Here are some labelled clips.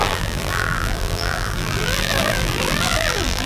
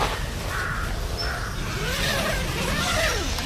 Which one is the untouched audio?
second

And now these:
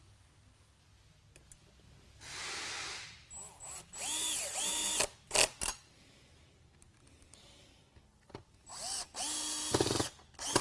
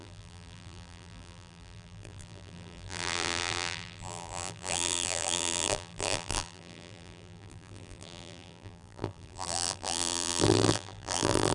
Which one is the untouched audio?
first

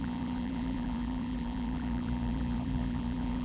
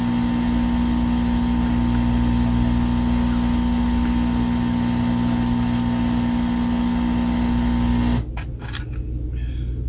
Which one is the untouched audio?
second